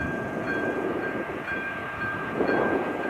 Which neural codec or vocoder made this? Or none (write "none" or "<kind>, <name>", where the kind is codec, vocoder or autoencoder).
vocoder, Vocos